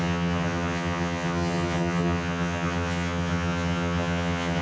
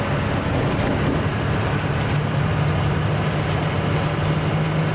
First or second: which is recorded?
second